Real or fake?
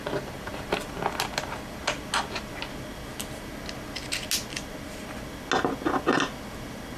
real